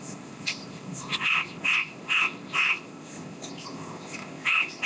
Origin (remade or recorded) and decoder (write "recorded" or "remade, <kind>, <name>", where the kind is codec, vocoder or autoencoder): remade, codec, ZipCodec